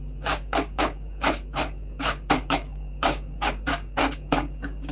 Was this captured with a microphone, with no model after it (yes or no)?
no